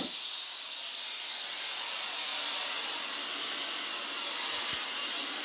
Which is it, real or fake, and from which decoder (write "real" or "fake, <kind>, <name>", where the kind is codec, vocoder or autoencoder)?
real